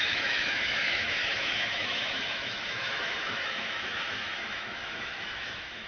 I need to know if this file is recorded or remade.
remade